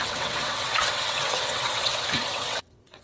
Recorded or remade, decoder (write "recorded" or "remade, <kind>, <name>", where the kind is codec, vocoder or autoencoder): remade, vocoder, WaveNeXt